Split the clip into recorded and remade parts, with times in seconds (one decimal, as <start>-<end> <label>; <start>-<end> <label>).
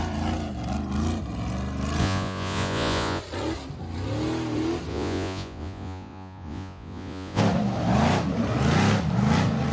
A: 0.0-2.0 recorded; 2.0-3.2 remade; 3.2-4.9 recorded; 4.9-7.4 remade; 7.4-9.7 recorded